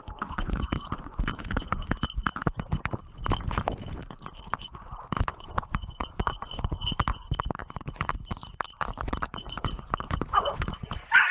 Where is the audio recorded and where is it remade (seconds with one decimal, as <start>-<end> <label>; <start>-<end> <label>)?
0.0-3.0 remade; 3.0-4.6 recorded; 4.6-11.3 remade